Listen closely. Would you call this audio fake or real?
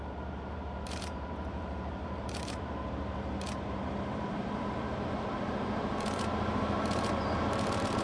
fake